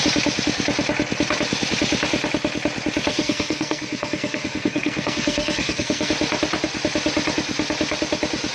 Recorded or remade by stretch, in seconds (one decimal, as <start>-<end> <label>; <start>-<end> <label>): 0.0-3.1 recorded; 3.1-6.1 remade; 6.1-8.5 recorded